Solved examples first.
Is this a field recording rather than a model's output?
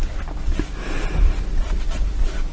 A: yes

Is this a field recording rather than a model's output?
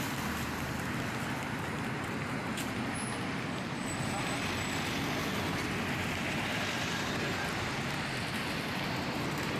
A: yes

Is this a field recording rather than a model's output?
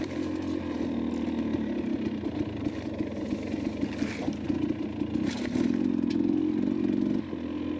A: yes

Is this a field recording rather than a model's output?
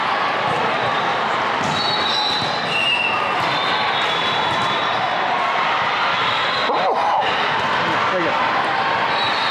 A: no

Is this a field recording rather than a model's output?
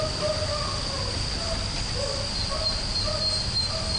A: yes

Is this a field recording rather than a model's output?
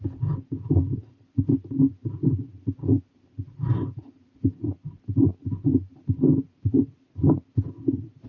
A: yes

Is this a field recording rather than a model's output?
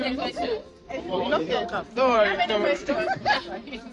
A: no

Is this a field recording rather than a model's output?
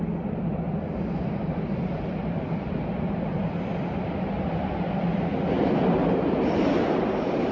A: yes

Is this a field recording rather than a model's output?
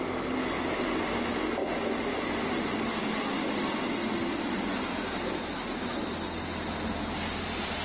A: yes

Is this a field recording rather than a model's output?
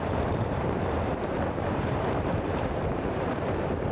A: no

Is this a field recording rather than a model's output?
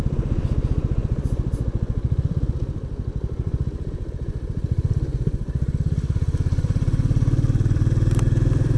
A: no